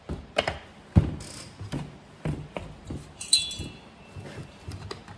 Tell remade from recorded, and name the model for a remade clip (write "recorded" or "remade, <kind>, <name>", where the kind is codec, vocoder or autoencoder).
recorded